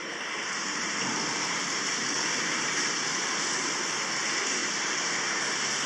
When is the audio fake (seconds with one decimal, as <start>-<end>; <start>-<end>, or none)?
0.0-3.5; 4.6-5.5